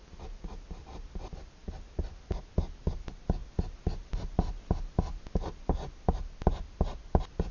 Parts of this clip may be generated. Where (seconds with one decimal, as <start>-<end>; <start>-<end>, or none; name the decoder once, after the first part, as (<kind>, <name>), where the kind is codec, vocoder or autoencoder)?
none